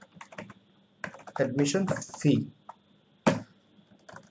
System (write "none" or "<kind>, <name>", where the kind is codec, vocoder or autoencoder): none